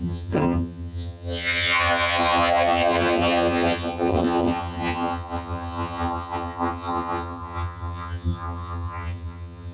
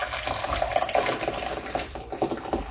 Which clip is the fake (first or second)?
first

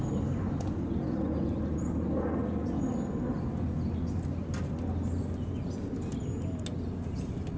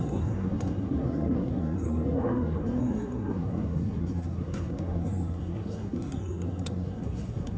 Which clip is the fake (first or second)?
second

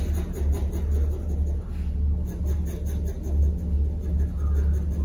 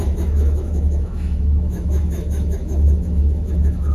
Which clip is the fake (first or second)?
second